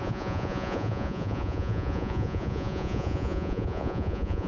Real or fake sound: fake